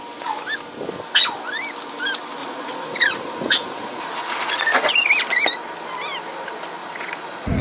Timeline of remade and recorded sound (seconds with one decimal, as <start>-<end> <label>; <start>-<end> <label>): 0.0-2.4 recorded; 2.4-4.9 remade; 4.9-6.8 recorded; 6.8-7.6 remade